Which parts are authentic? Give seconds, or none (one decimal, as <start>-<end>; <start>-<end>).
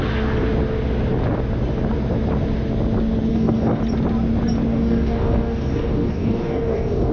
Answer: 0.0-3.3; 3.8-4.7